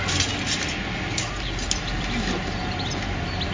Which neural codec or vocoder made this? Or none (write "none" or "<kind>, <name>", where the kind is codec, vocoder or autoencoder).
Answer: none